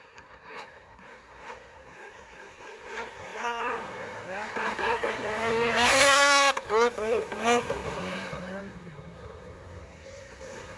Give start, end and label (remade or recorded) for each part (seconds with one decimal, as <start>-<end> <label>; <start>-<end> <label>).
0.0-10.8 remade